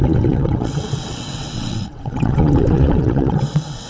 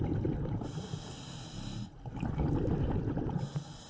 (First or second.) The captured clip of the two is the second